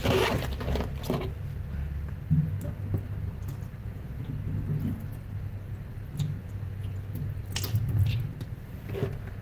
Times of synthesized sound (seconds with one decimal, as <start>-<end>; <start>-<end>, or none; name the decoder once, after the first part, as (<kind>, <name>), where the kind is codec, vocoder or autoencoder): 3.8-4.3 (vocoder, Vocos); 6.4-7.0